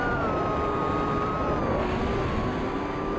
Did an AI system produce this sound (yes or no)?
no